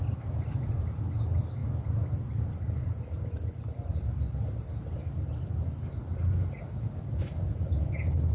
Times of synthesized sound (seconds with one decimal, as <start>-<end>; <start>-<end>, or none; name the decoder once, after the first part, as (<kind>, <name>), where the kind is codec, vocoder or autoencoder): none